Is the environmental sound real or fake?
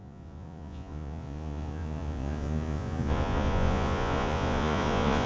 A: fake